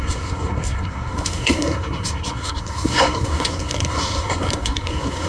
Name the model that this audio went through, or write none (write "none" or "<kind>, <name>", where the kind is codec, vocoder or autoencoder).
codec, SNAC